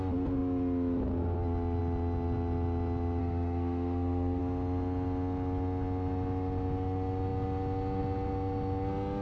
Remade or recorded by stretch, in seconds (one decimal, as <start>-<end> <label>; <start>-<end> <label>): 0.0-3.2 recorded; 3.2-4.4 remade; 4.4-9.2 recorded